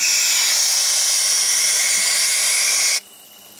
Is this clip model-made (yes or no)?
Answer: no